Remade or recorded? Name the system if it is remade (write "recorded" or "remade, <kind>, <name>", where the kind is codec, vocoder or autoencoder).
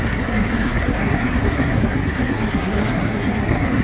remade, codec, SNAC